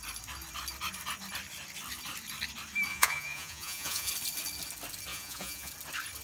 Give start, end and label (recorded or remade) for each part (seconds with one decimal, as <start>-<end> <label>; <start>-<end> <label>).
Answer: 0.0-2.9 recorded; 2.9-4.1 remade; 4.1-5.1 recorded; 5.1-5.7 remade; 5.7-6.2 recorded